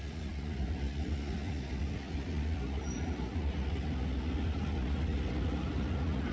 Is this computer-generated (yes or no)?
yes